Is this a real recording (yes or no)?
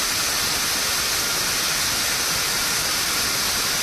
yes